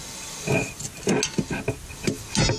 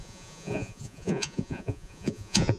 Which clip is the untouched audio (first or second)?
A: first